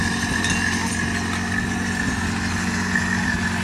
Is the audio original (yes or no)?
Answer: yes